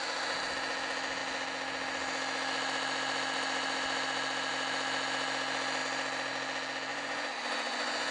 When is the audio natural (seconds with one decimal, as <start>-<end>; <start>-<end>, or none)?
0.0-6.9